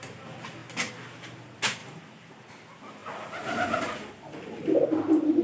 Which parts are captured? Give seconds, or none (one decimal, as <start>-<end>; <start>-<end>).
0.0-5.4